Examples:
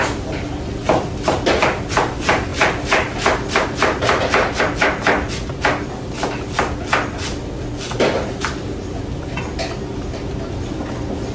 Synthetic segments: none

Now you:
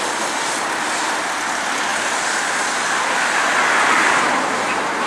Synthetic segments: none

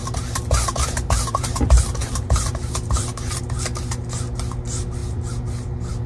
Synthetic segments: 0.0-3.4 (vocoder, BigVGAN v2)

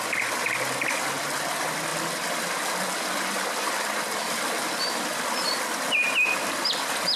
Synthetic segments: 1.9-5.6 (vocoder, BigVGAN v2)

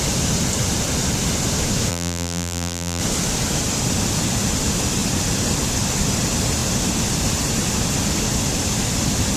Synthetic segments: 1.9-3.0 (vocoder, BigVGAN v2)

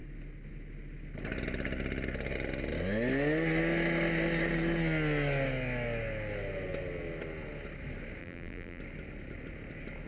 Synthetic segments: 8.2-8.8 (vocoder, BigVGAN v2)